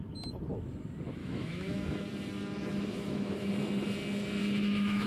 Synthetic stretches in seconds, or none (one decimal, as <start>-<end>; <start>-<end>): 1.2-2.0; 2.6-3.5; 4.4-5.1